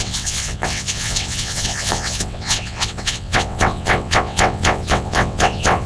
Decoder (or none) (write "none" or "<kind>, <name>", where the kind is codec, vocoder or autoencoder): vocoder, WaveNeXt